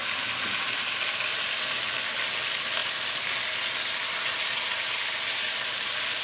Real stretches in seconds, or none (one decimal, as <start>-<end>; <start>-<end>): 0.0-2.8; 4.9-6.2